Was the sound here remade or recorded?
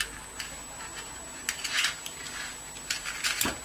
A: recorded